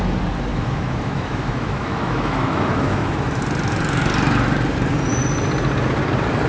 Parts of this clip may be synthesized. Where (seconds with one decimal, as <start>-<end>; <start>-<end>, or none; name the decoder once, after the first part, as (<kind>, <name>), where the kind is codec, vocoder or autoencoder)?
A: 0.5-3.4 (autoencoder, DAC-VAE)